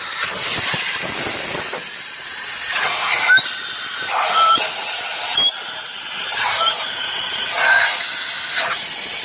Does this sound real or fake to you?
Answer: real